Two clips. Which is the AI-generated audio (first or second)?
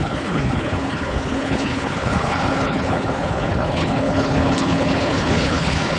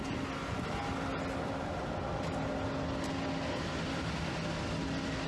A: first